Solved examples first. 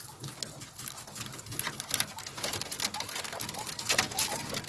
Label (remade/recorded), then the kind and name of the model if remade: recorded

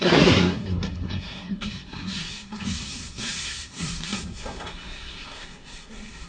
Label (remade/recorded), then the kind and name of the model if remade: remade, codec, SNAC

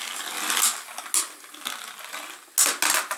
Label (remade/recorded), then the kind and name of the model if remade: recorded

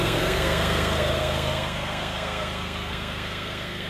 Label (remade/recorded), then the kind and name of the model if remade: remade, codec, SNAC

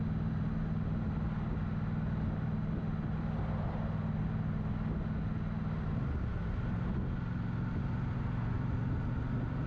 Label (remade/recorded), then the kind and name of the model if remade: recorded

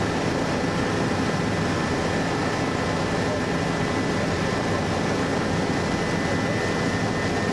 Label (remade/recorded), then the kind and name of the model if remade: recorded